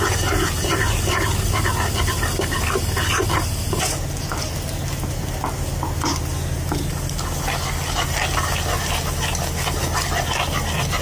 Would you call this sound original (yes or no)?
yes